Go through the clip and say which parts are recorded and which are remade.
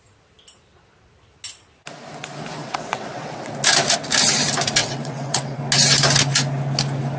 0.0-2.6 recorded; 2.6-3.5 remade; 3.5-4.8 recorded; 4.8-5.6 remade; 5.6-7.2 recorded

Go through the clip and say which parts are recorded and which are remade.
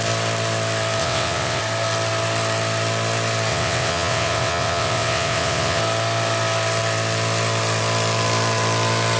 0.0-1.0 recorded; 1.0-1.6 remade; 1.6-3.5 recorded; 3.5-5.8 remade; 5.8-9.2 recorded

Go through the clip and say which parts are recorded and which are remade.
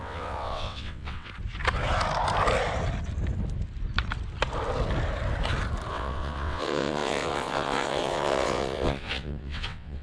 0.0-1.3 remade; 1.3-5.9 recorded; 5.9-10.0 remade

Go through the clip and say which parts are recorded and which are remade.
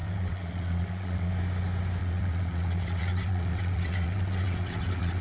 0.0-1.3 remade; 1.3-2.0 recorded; 2.0-5.2 remade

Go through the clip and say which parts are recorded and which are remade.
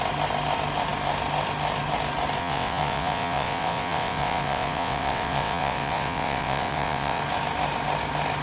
0.0-2.4 recorded; 2.4-7.2 remade; 7.2-8.4 recorded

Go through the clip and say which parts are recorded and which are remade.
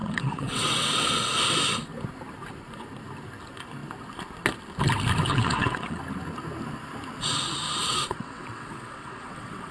0.0-1.3 remade; 1.3-5.3 recorded; 5.3-6.0 remade; 6.0-7.8 recorded; 7.8-9.7 remade